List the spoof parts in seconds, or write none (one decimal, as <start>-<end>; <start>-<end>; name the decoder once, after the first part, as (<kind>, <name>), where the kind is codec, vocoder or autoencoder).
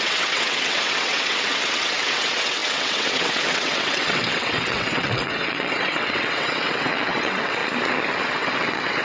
0.0-7.6 (vocoder, WaveNeXt); 8.2-9.0